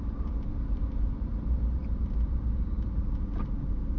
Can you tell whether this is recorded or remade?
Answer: remade